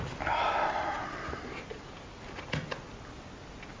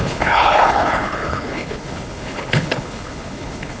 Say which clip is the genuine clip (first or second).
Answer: first